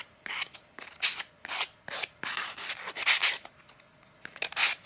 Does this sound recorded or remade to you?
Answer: recorded